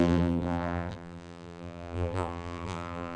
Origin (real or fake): fake